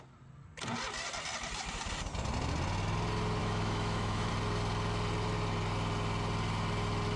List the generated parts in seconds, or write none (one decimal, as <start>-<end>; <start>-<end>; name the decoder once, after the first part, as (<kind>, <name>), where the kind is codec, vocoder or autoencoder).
3.4-4.3 (autoencoder, DAC-VAE)